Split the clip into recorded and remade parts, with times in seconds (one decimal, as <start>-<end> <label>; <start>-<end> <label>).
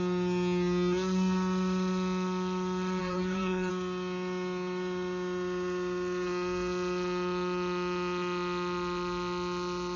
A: 0.0-3.0 recorded; 3.0-3.7 remade; 3.7-10.0 recorded